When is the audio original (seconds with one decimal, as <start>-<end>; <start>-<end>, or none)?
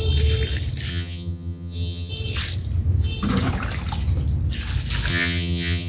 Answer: 0.0-0.9; 2.1-5.1